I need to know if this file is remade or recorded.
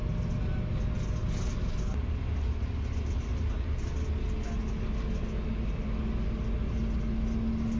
recorded